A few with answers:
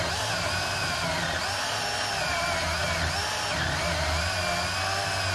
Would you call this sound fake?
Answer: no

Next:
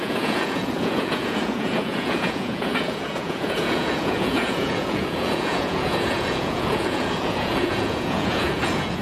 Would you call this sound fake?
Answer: yes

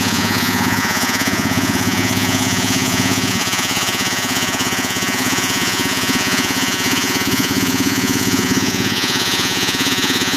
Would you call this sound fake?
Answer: yes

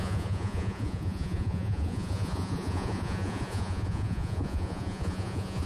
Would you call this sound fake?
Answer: yes